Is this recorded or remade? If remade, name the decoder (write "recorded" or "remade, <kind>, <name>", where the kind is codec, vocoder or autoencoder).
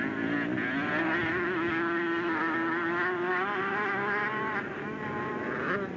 recorded